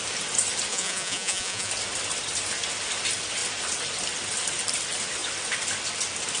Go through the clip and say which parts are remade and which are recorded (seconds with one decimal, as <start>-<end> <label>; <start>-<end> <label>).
0.0-0.7 recorded; 0.7-1.7 remade; 1.7-6.4 recorded